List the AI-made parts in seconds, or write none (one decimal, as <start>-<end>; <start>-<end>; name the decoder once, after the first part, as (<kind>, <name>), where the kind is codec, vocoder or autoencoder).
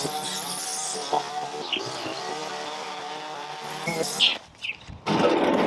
none